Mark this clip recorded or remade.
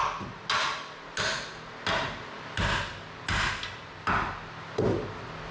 recorded